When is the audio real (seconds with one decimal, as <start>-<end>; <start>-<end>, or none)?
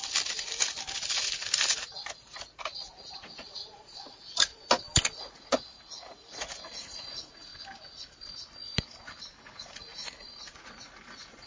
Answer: 0.0-2.0; 4.5-5.2; 7.5-9.4